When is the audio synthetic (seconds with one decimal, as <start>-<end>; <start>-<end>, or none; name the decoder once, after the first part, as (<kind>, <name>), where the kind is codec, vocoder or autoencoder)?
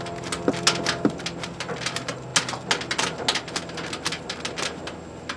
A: none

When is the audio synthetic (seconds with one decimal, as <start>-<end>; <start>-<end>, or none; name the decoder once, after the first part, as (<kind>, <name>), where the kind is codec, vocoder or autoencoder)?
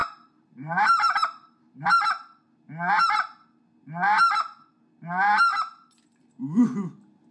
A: 0.0-1.9 (vocoder, BigVGAN v2); 5.5-6.2